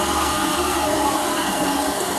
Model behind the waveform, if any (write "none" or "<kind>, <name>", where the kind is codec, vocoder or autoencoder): codec, SNAC